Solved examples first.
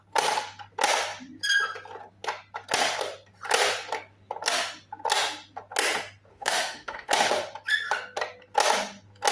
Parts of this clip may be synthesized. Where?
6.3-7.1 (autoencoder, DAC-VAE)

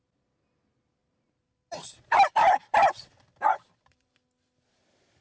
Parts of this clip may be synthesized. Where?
1.0-4.1 (vocoder, BigVGAN v2)